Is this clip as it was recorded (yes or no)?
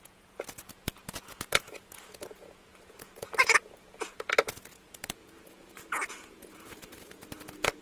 no